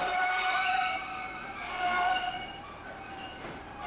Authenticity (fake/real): fake